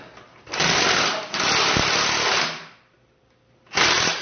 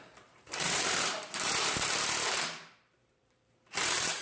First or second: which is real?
first